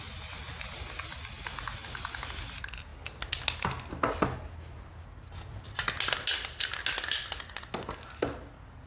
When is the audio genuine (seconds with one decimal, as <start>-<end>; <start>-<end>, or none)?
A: 0.0-8.9